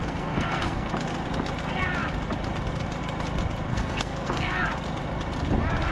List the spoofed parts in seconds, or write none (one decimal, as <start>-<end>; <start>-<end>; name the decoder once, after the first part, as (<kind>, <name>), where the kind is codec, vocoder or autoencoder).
0.0-0.9 (codec, SNAC); 3.7-4.6